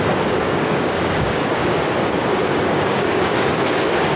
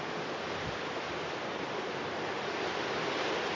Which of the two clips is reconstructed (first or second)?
first